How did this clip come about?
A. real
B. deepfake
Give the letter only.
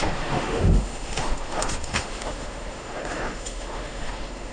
B